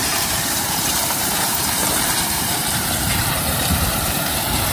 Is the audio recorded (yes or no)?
no